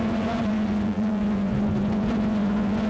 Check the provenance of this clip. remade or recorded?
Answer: remade